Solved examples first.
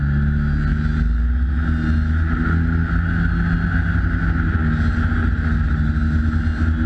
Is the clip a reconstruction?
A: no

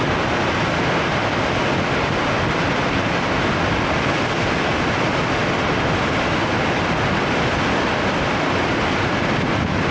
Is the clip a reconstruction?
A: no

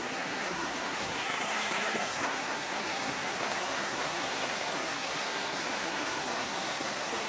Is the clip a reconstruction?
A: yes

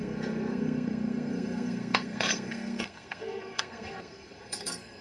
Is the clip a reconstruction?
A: yes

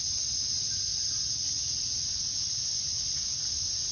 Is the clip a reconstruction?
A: no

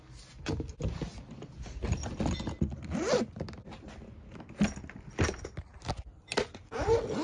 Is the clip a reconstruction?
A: no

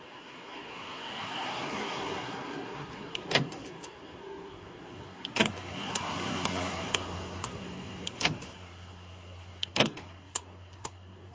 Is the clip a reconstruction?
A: yes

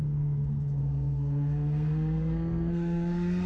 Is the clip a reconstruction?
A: yes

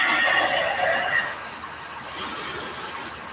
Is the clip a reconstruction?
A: no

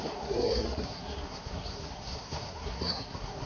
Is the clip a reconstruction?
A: yes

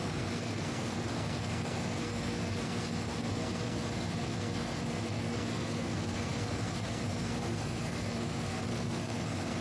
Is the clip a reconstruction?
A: yes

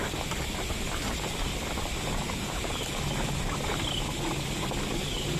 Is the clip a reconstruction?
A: no